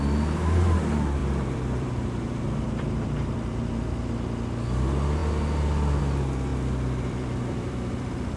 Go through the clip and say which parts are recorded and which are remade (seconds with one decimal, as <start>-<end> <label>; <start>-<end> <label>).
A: 0.0-1.2 recorded; 1.2-3.7 remade; 3.7-6.5 recorded; 6.5-8.4 remade